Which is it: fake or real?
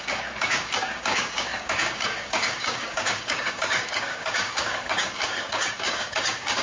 fake